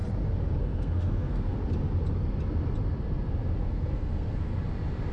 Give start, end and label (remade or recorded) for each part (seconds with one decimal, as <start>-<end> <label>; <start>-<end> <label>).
0.0-0.6 recorded; 0.6-1.6 remade; 1.6-3.6 recorded; 3.6-4.5 remade; 4.5-5.1 recorded

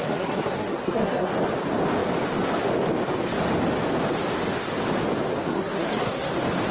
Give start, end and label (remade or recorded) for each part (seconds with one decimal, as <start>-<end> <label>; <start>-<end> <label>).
0.0-1.3 remade; 1.3-5.5 recorded; 5.5-6.3 remade; 6.3-6.7 recorded